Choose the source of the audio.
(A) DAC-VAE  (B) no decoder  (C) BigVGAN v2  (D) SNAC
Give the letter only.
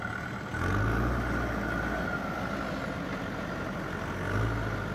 B